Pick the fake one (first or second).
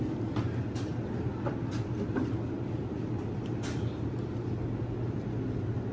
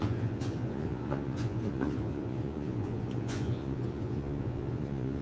second